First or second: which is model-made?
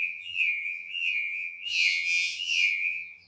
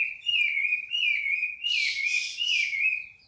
first